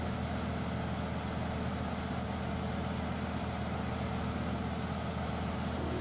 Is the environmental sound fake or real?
real